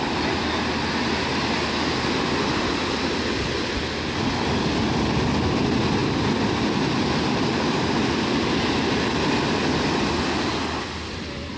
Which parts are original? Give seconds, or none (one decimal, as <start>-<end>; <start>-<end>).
0.0-6.0; 8.6-11.6